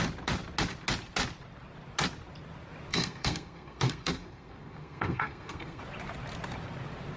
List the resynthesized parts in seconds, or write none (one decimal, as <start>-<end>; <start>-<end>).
2.9-5.8